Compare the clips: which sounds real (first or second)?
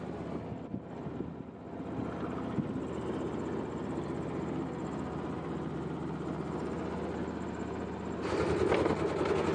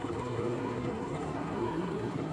first